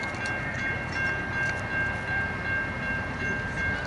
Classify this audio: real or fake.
real